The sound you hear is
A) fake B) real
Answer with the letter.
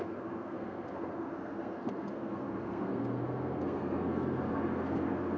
A